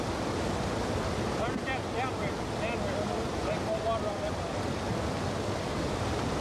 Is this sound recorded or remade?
recorded